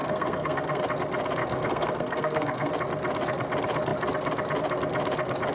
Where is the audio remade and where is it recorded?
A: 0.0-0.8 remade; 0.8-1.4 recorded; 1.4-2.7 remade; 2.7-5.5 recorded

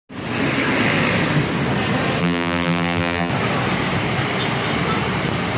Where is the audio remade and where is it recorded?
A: 0.0-2.2 recorded; 2.2-3.3 remade; 3.3-5.6 recorded

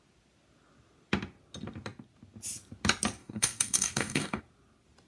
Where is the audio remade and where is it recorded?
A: 0.0-3.2 recorded; 3.2-4.4 remade; 4.4-5.1 recorded